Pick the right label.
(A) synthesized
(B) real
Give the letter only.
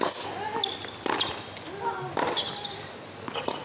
B